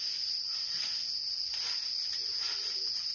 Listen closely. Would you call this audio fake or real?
real